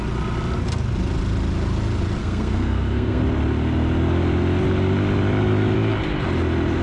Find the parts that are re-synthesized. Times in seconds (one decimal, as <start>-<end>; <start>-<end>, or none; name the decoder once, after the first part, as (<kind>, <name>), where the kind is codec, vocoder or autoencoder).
2.2-3.2 (codec, SNAC)